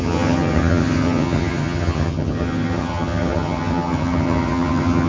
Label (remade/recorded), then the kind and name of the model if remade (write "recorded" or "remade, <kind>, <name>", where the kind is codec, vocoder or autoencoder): remade, vocoder, HiFi-GAN